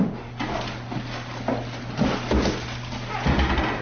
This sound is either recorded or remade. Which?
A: recorded